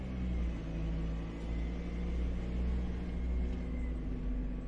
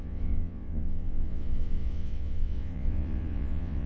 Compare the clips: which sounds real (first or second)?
first